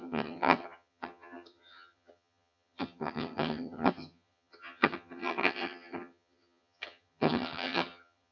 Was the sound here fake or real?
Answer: fake